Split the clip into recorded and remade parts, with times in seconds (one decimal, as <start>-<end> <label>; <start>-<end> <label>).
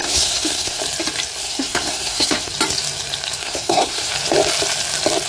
0.0-0.8 remade; 0.8-1.4 recorded; 1.4-2.5 remade; 2.5-3.4 recorded; 3.4-4.1 remade; 4.1-5.3 recorded